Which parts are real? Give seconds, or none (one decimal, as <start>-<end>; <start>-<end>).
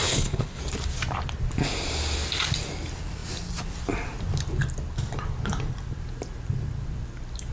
0.6-7.5